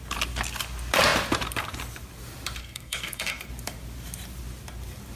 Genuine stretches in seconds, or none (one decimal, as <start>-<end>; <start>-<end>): 0.0-2.6; 3.5-5.2